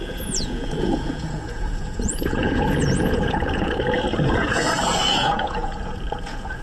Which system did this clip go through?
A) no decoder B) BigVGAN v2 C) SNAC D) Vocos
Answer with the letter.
D